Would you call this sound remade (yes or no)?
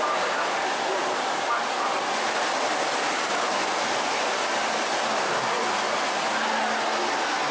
no